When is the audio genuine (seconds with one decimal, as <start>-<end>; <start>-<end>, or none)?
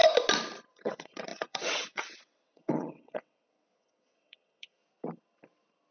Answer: 0.0-0.7; 4.8-5.9